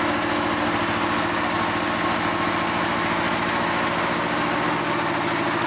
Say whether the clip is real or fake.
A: real